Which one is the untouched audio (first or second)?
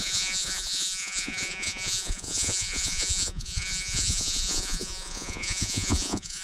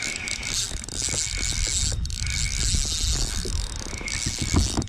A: second